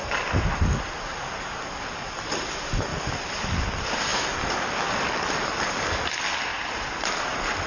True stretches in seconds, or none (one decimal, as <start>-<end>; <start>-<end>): 0.0-6.5; 7.1-7.7